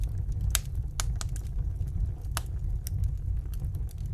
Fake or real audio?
real